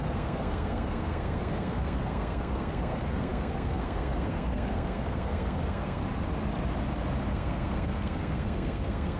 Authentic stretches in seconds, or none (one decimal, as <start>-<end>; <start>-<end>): 6.0-7.3